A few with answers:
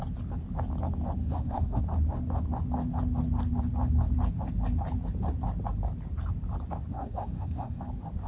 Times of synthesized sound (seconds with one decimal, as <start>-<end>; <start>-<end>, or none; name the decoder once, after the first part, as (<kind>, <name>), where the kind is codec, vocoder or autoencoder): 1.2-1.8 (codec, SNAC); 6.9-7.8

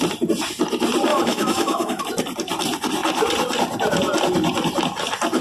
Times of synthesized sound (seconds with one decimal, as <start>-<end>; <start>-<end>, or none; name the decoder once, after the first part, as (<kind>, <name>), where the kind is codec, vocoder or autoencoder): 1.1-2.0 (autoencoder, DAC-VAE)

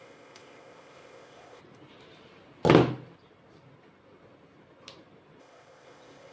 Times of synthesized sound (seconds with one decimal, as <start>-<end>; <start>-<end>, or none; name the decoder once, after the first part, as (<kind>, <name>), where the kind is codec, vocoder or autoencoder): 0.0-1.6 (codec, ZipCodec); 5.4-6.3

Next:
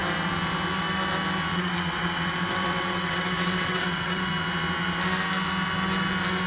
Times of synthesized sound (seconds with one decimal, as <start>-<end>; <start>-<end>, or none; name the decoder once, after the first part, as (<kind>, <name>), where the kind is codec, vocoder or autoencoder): 1.5-4.3 (vocoder, WaveNeXt)

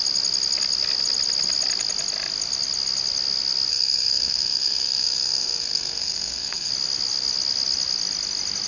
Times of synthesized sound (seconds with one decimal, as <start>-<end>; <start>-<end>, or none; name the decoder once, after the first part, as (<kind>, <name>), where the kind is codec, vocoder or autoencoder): 3.7-6.7 (codec, SNAC)

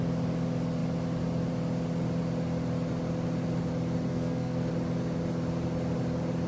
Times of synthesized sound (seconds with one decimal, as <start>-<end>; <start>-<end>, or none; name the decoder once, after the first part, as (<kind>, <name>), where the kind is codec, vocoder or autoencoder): 4.1-4.7 (codec, SNAC)